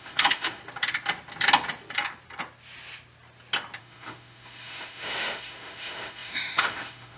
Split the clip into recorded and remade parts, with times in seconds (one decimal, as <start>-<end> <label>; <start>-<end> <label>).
0.0-0.6 remade; 0.6-3.8 recorded; 3.8-7.2 remade